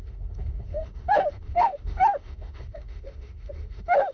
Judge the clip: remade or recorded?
remade